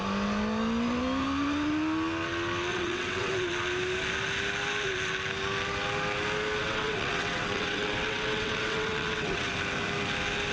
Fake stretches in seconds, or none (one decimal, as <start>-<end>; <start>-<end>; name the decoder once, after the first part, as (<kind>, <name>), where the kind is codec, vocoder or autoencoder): 2.7-3.3 (vocoder, WaveNeXt); 6.6-9.5